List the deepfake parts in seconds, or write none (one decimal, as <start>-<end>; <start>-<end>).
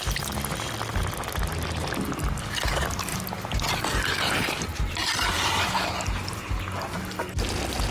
0.9-1.5; 3.1-3.7; 4.7-5.7